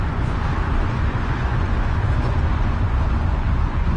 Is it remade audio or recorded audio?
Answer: remade